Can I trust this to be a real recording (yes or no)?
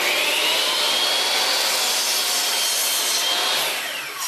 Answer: yes